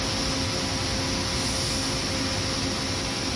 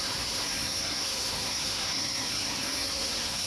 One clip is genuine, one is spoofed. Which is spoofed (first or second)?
second